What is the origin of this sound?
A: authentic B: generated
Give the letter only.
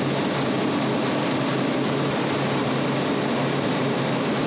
A